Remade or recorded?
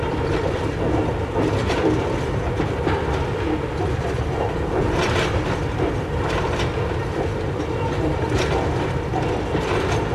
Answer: recorded